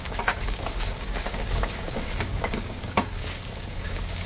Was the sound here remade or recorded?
remade